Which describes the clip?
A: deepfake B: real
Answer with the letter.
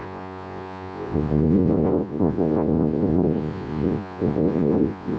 A